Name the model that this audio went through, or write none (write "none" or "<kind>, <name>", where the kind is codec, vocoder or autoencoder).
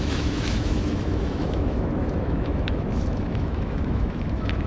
autoencoder, DAC-VAE